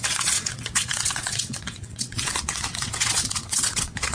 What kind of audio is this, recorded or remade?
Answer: remade